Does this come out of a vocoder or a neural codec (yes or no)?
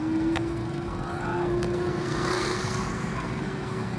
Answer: yes